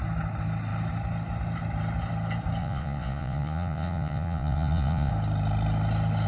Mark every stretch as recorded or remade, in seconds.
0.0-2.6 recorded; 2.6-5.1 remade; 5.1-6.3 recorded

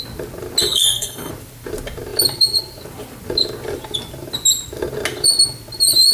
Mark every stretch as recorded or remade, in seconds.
0.0-0.6 recorded; 0.6-1.3 remade; 1.3-6.1 recorded